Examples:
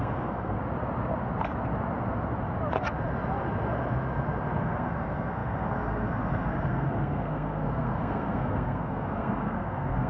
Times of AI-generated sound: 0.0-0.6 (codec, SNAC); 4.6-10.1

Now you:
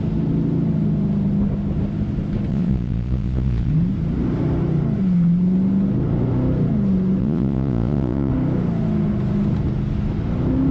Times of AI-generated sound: 2.5-3.7 (vocoder, Vocos); 7.2-8.3

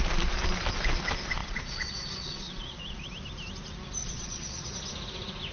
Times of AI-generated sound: 1.4-3.1 (vocoder, Vocos); 4.0-4.7

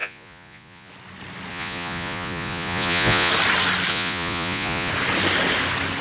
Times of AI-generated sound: 0.0-0.9 (vocoder, Vocos); 1.5-3.3; 3.9-4.9

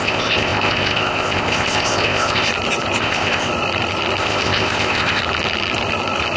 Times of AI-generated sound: 0.0-2.5 (codec, ZipCodec); 3.0-3.5; 4.2-5.2

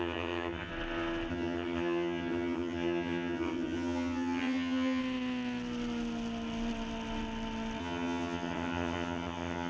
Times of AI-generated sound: 0.0-0.7 (vocoder, HiFi-GAN); 1.3-5.0; 7.8-9.7